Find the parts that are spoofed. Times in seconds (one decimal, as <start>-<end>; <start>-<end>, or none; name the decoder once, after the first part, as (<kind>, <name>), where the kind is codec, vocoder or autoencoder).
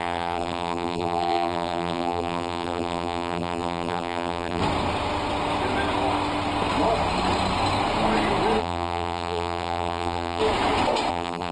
0.0-4.6 (vocoder, BigVGAN v2); 8.6-10.4; 11.1-11.5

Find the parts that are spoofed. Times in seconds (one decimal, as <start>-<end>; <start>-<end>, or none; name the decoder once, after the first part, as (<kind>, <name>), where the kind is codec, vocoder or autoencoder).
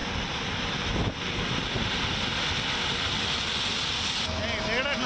none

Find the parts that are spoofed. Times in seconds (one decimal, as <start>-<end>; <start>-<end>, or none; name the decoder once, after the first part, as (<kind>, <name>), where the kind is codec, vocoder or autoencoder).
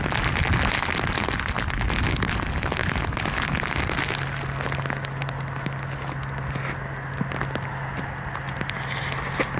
none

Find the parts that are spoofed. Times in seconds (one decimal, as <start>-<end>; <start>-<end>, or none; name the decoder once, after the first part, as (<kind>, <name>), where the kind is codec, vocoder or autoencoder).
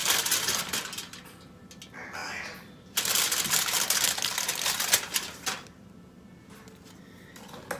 none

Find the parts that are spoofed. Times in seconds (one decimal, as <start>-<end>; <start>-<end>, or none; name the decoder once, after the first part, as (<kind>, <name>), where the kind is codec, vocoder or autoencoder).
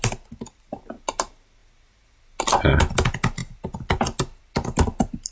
none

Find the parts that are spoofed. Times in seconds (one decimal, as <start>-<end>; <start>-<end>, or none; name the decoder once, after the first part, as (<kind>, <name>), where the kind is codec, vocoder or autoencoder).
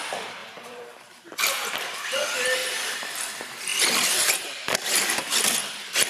0.4-1.7 (vocoder, BigVGAN v2); 2.6-3.3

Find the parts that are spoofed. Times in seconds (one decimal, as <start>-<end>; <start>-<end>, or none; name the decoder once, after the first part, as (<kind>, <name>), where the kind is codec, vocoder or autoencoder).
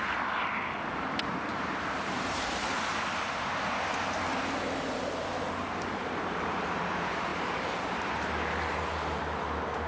1.5-2.5 (vocoder, BigVGAN v2); 2.9-3.5; 7.3-8.1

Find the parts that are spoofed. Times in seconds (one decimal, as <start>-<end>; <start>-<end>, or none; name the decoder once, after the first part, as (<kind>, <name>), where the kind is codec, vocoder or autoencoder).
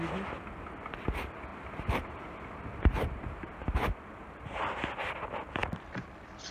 1.5-4.4 (vocoder, BigVGAN v2)